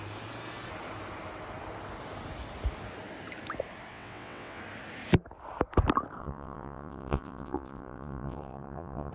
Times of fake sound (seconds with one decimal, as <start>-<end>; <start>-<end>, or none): 3.9-4.6; 6.2-9.1